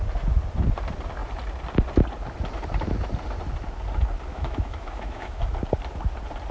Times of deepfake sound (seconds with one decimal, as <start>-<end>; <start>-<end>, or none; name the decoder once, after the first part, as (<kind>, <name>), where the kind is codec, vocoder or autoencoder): 4.3-5.4 (autoencoder, DAC-VAE)